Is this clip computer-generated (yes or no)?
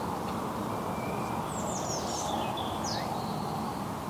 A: no